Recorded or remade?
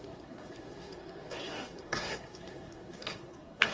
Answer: remade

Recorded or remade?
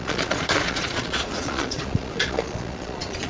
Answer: remade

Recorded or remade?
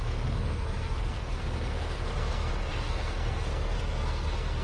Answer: remade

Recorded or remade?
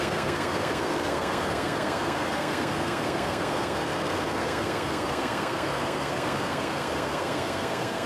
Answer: remade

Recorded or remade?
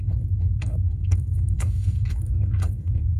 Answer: remade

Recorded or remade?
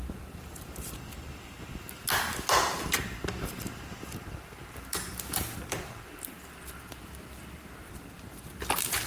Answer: recorded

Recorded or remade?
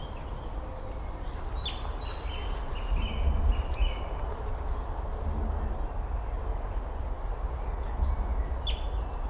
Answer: recorded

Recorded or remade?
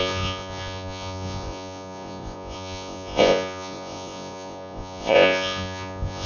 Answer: remade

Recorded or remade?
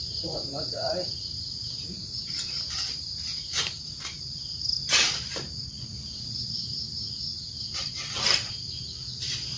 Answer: remade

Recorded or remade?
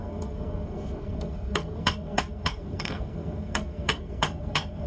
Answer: remade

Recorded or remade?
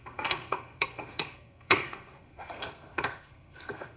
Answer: remade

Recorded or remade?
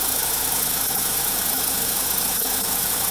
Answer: remade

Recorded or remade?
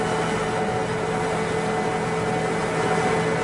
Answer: recorded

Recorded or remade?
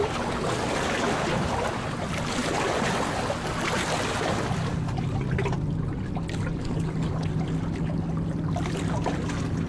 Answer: recorded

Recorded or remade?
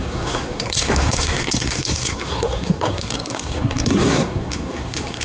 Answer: remade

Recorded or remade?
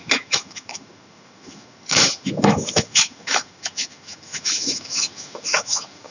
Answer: remade